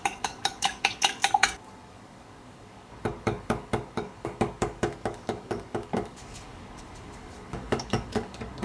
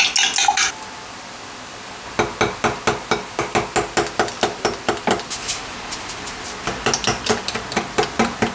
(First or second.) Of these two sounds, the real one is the second